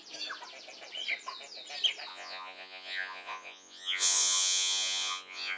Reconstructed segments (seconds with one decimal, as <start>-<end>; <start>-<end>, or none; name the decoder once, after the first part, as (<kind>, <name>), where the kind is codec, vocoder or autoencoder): 2.1-5.6 (vocoder, Vocos)